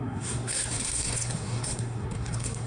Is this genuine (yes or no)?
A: no